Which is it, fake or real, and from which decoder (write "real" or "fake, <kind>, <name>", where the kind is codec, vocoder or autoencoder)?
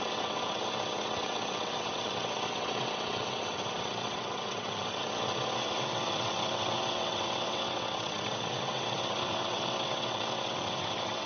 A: fake, vocoder, WaveNeXt